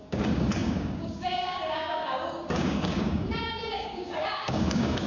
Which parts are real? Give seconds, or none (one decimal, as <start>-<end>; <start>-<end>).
none

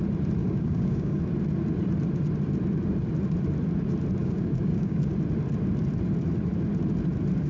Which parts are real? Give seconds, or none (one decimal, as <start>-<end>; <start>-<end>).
0.0-0.4; 1.2-4.2; 5.0-7.5

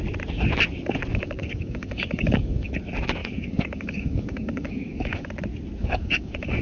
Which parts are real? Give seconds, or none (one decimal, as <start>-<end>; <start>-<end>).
0.0-1.1; 2.7-3.2; 5.3-5.8

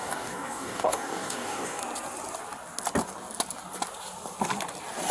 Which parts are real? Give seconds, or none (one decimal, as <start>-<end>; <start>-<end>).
1.8-5.1